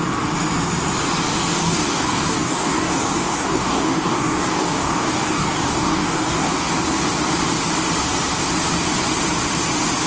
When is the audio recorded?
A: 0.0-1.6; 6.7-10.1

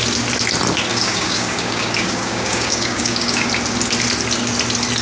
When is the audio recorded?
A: 0.0-0.9; 3.5-5.0

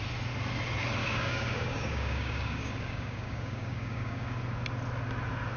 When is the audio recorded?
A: 0.0-1.0; 4.4-5.6